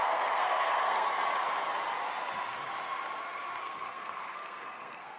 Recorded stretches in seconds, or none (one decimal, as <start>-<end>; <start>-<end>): 1.2-3.6